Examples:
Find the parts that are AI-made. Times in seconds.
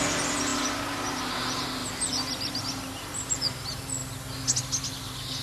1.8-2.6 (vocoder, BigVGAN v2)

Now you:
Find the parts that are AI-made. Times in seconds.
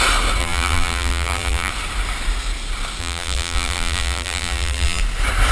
0.4-1.7 (vocoder, BigVGAN v2); 3.0-5.0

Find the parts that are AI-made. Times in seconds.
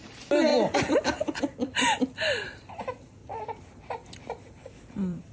0.0-3.2 (vocoder, BigVGAN v2); 4.6-5.3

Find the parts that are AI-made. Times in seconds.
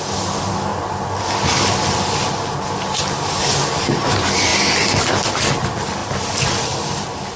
4.5-5.1 (vocoder, BigVGAN v2); 6.0-7.4